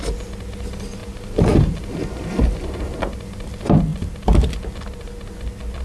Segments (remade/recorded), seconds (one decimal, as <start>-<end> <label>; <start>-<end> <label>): 0.0-5.8 recorded